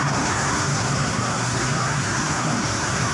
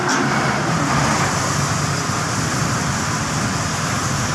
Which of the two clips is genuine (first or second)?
second